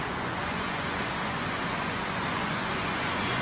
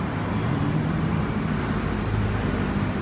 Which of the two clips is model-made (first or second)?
first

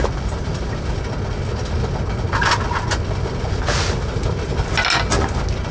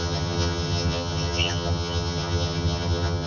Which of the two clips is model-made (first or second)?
second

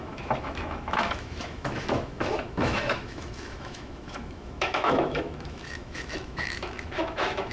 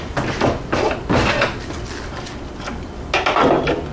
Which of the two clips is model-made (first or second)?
first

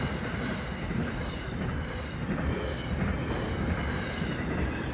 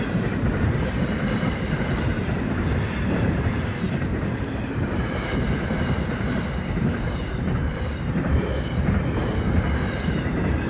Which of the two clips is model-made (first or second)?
second